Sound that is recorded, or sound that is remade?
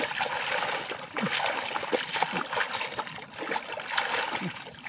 recorded